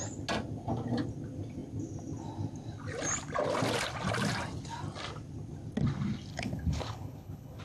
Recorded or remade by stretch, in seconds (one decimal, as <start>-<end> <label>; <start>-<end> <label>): 0.0-6.3 recorded; 6.3-7.6 remade